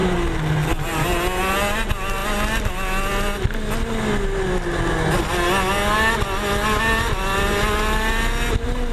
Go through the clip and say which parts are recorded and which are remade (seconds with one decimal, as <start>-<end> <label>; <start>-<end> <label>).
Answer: 0.0-8.9 recorded